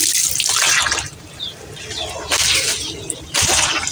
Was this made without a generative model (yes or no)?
yes